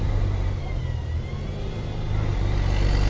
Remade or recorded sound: recorded